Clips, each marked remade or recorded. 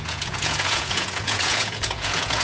remade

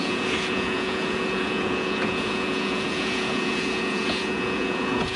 remade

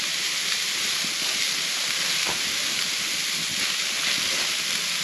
recorded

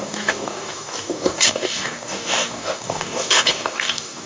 remade